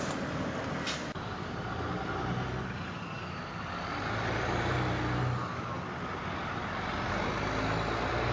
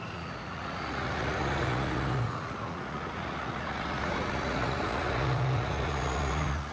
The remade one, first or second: second